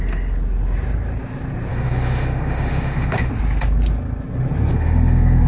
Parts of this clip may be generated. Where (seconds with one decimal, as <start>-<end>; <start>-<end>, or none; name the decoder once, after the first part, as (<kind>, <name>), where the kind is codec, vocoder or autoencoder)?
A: 1.7-3.3 (autoencoder, DAC-VAE); 4.7-5.5